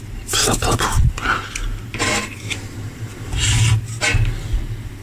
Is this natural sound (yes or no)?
yes